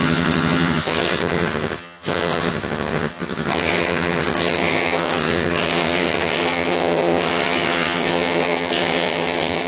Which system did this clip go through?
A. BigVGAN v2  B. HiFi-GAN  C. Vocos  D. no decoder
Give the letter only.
B